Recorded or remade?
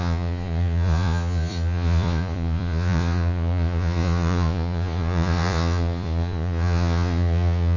remade